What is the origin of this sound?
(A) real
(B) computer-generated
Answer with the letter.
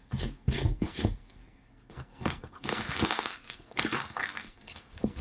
B